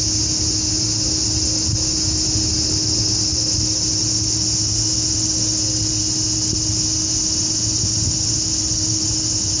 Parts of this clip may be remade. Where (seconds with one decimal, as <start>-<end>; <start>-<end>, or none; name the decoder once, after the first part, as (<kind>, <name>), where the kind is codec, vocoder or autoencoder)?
none